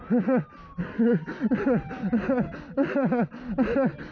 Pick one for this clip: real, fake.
real